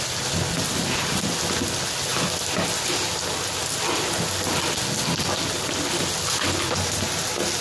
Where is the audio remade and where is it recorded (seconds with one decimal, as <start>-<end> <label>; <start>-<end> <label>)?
0.0-7.6 recorded